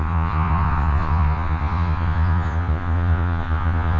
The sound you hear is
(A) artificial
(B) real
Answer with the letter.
A